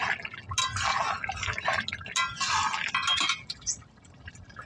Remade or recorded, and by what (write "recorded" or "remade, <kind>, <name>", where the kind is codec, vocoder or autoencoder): recorded